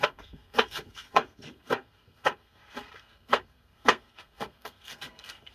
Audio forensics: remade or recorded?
remade